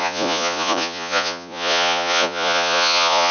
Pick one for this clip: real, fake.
fake